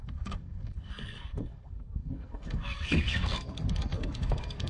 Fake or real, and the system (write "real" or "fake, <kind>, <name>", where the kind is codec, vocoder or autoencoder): fake, codec, SNAC